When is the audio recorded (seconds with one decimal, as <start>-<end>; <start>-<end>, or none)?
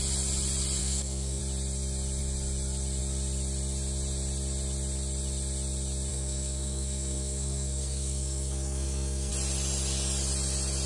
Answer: 0.0-0.8; 1.4-6.1; 9.3-10.9